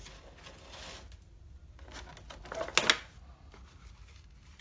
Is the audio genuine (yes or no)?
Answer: yes